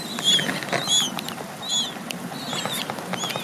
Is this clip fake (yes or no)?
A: no